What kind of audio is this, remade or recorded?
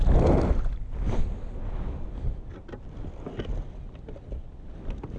recorded